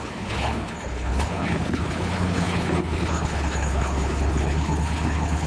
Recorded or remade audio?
remade